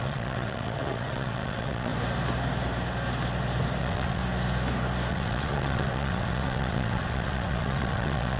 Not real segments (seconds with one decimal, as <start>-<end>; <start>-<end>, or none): 0.0-1.9; 3.8-4.2; 5.1-8.4

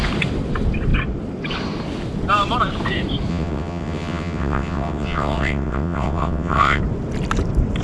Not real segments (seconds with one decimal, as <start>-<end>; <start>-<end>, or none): 3.3-6.8

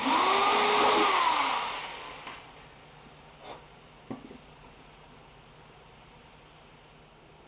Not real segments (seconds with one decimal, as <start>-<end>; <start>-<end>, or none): none

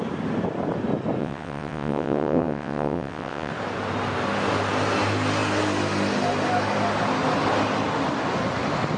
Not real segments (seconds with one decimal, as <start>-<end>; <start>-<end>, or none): 1.2-3.5

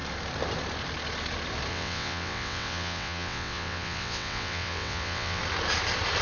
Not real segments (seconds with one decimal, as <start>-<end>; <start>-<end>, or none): 1.7-5.4

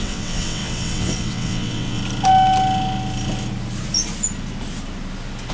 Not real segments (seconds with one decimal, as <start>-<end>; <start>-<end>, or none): 0.0-2.0